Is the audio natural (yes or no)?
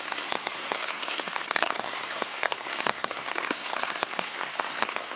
no